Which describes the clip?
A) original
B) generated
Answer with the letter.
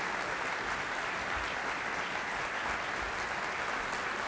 A